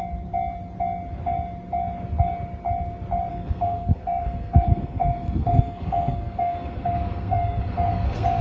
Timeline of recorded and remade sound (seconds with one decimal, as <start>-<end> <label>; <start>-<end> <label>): 0.0-3.3 recorded; 3.3-8.4 remade